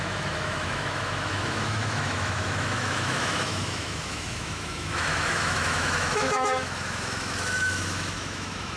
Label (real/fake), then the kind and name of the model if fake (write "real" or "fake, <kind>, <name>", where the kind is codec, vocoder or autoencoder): fake, autoencoder, DAC-VAE